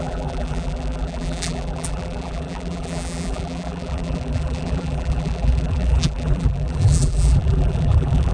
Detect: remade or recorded remade